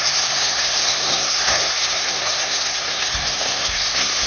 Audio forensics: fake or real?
fake